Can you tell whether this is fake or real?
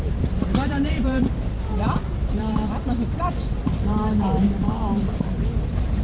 fake